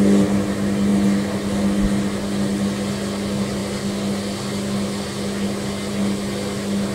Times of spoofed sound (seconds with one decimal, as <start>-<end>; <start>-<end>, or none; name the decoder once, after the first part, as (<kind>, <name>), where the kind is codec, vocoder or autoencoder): none